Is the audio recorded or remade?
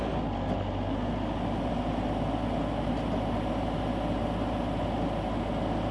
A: recorded